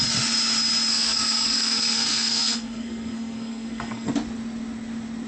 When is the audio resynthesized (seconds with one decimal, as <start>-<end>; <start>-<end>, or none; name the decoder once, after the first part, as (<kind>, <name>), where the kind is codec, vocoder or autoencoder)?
0.9-4.1 (codec, SNAC)